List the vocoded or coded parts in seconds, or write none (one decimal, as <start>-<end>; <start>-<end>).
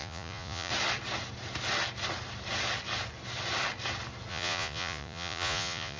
0.0-0.7; 4.3-6.0